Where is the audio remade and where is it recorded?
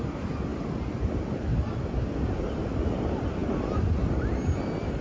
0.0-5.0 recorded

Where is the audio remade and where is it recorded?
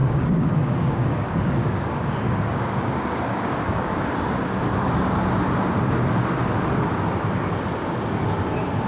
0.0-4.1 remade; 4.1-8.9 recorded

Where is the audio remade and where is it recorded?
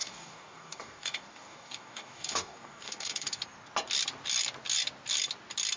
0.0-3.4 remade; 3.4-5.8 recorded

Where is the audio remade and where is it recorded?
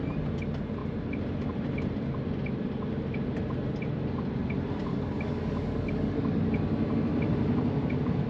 0.0-4.9 recorded; 4.9-6.5 remade; 6.5-8.3 recorded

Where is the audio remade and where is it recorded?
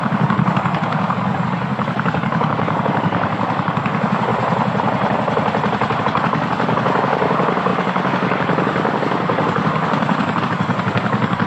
0.0-4.3 remade; 4.3-6.0 recorded; 6.0-11.5 remade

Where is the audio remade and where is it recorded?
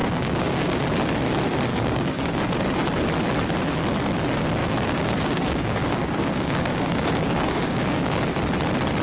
0.0-0.8 remade; 0.8-1.7 recorded; 1.7-2.4 remade; 2.4-4.6 recorded; 4.6-8.2 remade; 8.2-9.0 recorded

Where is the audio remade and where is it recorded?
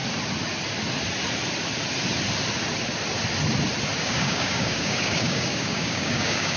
0.0-4.0 recorded; 4.0-6.6 remade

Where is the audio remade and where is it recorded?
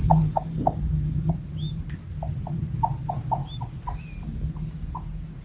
0.0-1.3 remade; 1.3-5.4 recorded